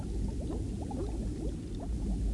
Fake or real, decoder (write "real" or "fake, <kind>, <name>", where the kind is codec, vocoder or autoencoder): real